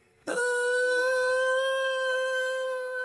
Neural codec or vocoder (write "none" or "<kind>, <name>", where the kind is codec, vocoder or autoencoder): codec, SNAC